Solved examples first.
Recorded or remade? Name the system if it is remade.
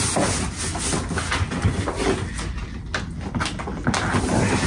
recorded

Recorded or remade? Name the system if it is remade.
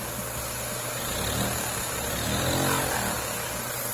recorded